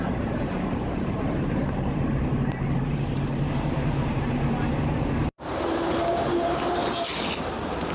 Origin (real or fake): fake